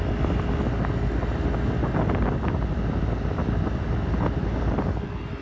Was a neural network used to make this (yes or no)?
no